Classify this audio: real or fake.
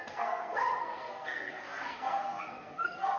fake